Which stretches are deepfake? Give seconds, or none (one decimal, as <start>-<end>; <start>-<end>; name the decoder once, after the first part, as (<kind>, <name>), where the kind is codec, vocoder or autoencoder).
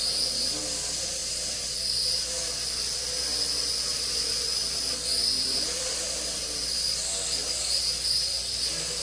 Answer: 5.1-6.2 (vocoder, BigVGAN v2)